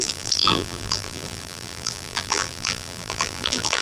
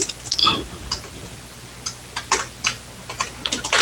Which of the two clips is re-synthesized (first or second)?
first